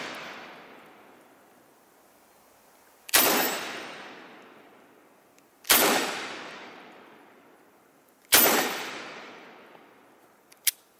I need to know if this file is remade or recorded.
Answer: remade